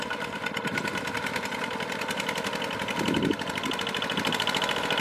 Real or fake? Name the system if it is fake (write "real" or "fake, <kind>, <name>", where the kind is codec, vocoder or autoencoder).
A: real